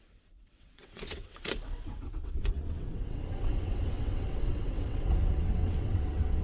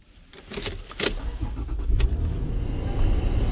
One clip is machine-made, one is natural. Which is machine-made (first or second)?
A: first